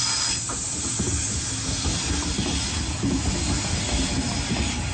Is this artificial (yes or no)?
no